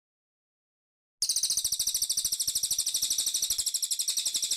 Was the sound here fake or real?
real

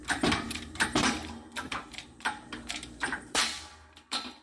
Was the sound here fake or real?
fake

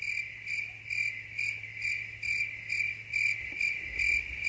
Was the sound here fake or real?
real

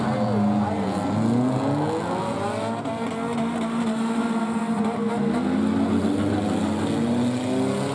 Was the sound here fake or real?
real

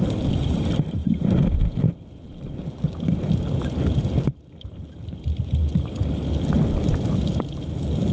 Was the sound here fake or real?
real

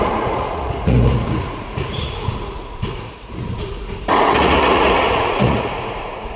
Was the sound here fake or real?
fake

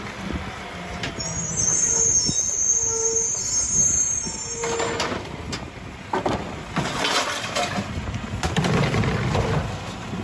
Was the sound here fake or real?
real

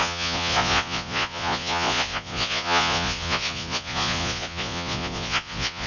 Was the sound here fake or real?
fake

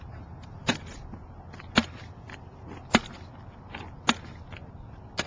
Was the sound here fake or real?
real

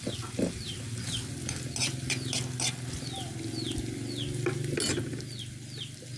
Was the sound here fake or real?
real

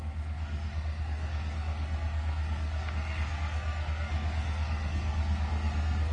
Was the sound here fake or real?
fake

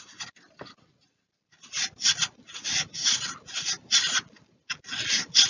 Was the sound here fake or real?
real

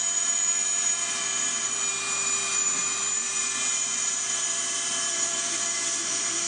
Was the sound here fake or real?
fake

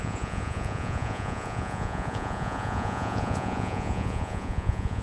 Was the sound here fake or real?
fake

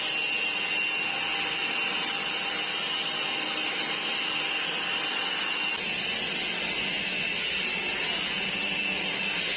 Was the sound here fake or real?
real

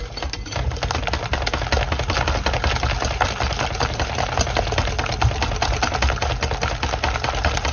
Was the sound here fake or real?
real